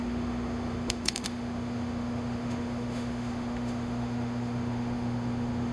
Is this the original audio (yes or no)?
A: no